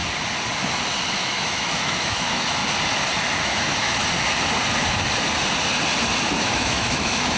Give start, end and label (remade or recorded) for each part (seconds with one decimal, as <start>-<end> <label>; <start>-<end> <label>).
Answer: 0.0-1.1 recorded; 1.1-2.6 remade; 2.6-3.4 recorded; 3.4-4.0 remade; 4.0-6.3 recorded; 6.3-7.4 remade